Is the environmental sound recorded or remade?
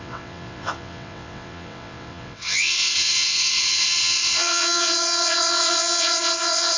remade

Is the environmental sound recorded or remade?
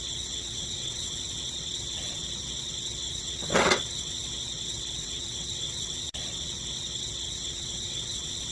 remade